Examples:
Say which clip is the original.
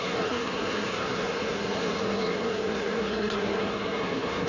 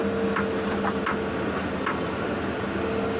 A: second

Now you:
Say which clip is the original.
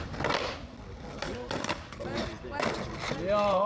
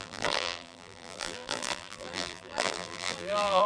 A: first